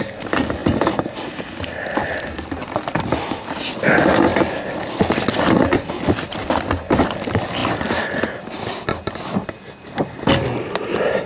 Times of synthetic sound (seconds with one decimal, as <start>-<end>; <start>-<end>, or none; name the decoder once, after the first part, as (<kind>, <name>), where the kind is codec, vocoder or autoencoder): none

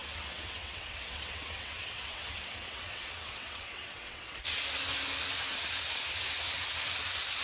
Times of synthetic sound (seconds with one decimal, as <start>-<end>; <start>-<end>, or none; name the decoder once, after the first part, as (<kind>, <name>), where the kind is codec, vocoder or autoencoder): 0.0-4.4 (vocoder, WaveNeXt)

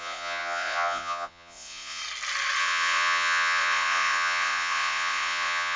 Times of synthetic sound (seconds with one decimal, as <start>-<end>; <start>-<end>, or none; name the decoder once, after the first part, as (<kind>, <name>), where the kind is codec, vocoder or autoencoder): 0.0-2.0 (vocoder, Vocos); 2.6-5.8

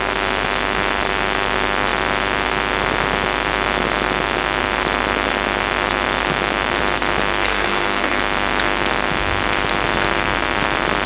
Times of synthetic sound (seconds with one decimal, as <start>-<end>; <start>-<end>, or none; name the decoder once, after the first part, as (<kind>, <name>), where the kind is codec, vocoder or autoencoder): 7.5-8.2 (codec, SNAC)